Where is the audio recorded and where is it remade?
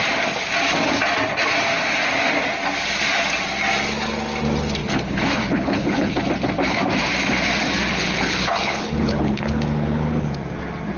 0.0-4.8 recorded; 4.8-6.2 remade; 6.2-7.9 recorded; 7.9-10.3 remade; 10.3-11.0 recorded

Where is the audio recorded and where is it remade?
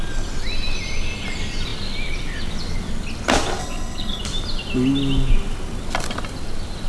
0.0-3.6 recorded; 3.6-4.2 remade; 4.2-6.9 recorded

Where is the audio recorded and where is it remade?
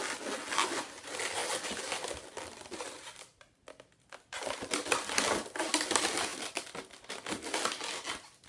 0.0-8.5 recorded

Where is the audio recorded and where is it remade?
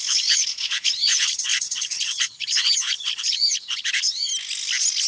0.0-4.3 remade; 4.3-5.1 recorded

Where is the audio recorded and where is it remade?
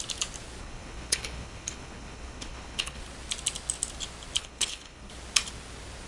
0.0-0.6 recorded; 0.6-3.0 remade; 3.0-4.4 recorded; 4.4-5.1 remade; 5.1-6.1 recorded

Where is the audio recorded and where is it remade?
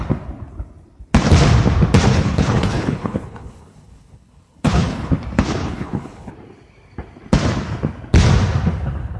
0.0-2.1 recorded; 2.1-5.1 remade; 5.1-5.6 recorded; 5.6-6.3 remade; 6.3-9.2 recorded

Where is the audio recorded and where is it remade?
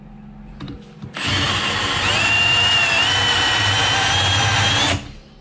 0.0-5.4 recorded